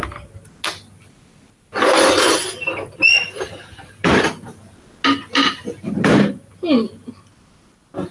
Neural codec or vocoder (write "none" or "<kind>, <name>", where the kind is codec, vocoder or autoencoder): none